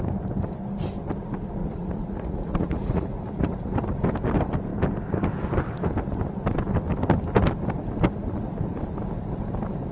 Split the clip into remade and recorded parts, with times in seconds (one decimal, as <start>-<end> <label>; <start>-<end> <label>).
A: 0.0-1.6 recorded; 1.6-3.8 remade; 3.8-9.9 recorded